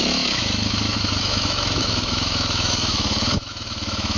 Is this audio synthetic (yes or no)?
yes